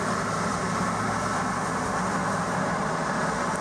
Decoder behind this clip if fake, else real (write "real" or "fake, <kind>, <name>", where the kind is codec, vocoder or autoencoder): real